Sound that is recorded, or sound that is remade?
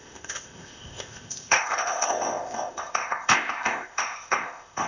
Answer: remade